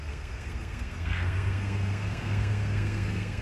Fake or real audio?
fake